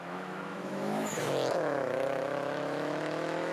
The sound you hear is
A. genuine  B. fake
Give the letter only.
B